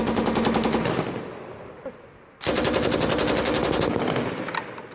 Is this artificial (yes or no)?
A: no